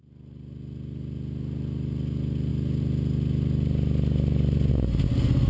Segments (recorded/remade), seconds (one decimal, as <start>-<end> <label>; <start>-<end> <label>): 0.0-5.5 recorded